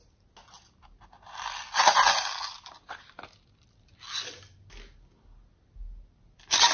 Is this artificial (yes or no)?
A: no